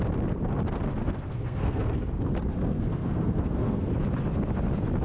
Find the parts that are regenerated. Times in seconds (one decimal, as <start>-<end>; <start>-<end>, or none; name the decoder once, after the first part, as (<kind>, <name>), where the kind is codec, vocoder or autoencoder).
1.0-1.9 (codec, SNAC); 2.5-3.9